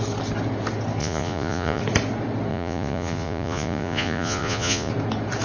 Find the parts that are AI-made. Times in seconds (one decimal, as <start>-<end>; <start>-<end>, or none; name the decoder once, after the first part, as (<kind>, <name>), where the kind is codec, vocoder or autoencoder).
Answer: 1.0-1.8 (vocoder, Vocos); 2.5-4.9